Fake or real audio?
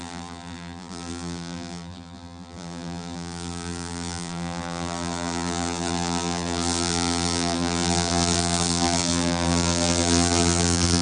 fake